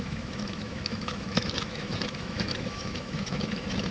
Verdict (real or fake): fake